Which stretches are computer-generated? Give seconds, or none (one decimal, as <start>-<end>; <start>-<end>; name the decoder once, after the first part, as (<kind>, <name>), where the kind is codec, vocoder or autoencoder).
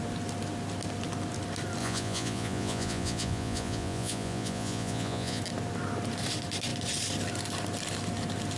1.8-5.4 (vocoder, Vocos)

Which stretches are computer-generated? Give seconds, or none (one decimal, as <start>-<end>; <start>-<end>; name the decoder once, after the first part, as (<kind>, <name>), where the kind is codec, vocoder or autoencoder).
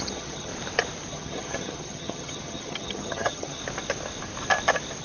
0.0-0.5 (vocoder, HiFi-GAN); 1.1-3.6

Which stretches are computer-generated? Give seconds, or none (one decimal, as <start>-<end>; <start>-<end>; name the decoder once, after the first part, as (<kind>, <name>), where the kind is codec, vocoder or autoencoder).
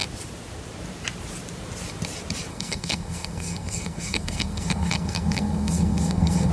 2.5-6.5 (codec, SNAC)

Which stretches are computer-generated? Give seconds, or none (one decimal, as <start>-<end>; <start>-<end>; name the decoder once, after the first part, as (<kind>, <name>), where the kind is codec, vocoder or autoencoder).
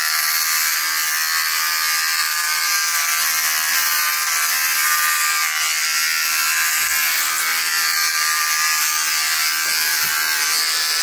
2.2-3.1 (vocoder, BigVGAN v2); 3.7-5.4; 7.5-8.1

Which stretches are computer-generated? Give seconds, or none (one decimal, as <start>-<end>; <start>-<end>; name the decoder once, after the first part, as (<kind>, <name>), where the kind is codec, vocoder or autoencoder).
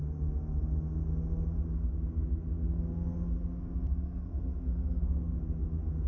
3.6-5.4 (codec, SNAC)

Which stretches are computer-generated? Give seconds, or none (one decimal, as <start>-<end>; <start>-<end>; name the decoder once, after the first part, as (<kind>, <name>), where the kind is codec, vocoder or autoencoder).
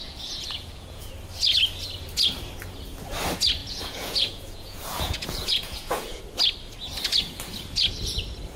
0.0-1.1 (vocoder, Vocos); 3.6-6.2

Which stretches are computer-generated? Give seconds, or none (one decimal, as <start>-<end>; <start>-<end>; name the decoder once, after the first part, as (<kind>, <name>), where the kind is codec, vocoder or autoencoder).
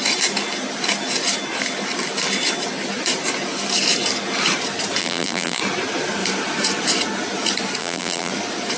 5.0-5.6 (vocoder, BigVGAN v2); 7.8-8.3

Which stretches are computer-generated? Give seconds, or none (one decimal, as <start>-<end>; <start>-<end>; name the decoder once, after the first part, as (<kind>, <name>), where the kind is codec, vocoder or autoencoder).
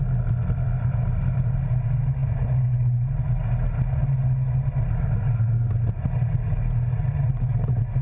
none